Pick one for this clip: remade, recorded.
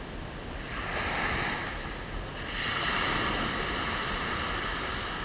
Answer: recorded